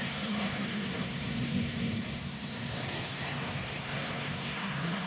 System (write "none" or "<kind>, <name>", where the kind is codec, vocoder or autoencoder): codec, SNAC